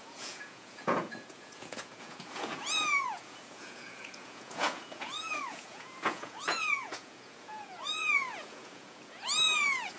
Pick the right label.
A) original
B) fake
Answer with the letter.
B